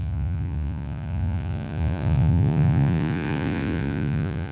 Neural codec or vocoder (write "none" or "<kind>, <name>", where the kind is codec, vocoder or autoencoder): vocoder, Vocos